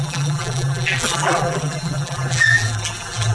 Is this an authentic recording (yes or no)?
no